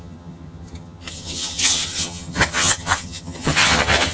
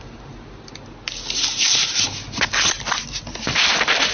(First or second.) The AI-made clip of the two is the first